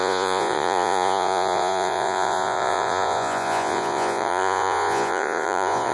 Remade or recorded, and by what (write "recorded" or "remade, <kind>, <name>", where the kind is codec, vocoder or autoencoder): remade, vocoder, Vocos